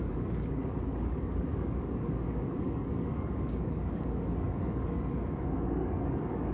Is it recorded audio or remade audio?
remade